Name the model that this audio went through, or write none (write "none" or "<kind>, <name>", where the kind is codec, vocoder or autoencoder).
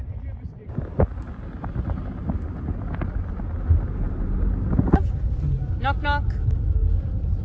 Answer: none